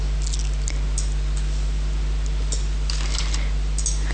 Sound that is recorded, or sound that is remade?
recorded